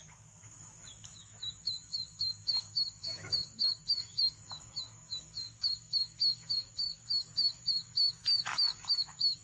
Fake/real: fake